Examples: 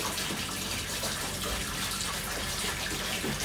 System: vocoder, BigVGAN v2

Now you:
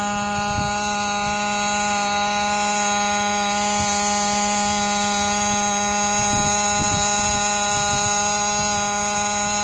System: none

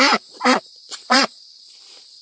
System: vocoder, BigVGAN v2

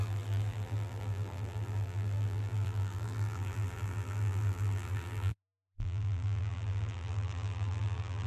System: vocoder, BigVGAN v2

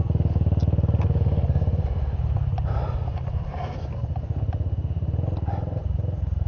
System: none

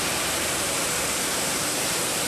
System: vocoder, BigVGAN v2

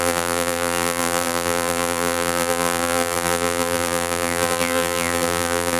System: vocoder, BigVGAN v2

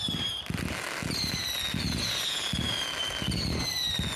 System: none